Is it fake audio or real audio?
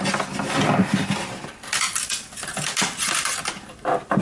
real